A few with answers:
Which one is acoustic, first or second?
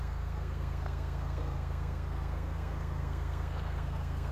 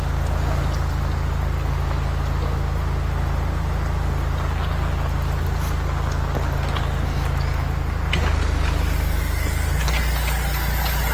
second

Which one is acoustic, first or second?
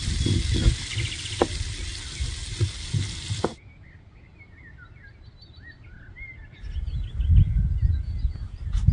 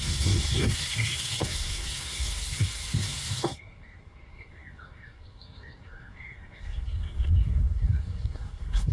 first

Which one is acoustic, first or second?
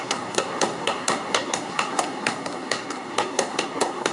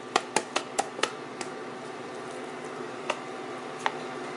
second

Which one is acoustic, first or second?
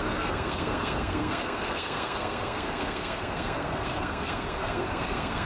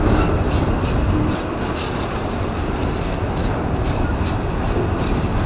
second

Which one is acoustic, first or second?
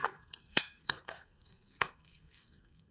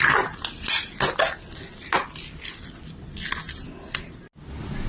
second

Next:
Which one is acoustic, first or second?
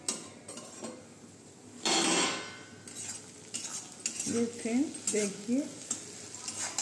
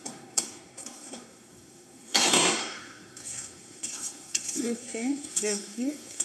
first